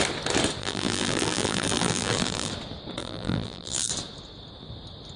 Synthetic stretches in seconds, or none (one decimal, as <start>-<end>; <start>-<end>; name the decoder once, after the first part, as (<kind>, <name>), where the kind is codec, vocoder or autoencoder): 0.6-2.5 (vocoder, BigVGAN v2); 3.0-3.9